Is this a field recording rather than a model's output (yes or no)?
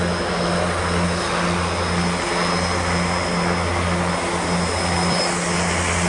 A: yes